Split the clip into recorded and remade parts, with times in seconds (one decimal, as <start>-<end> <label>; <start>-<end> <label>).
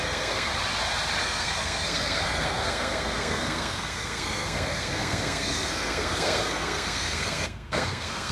0.0-0.5 remade; 0.5-1.2 recorded; 1.2-8.3 remade